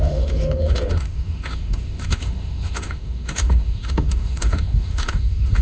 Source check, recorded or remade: remade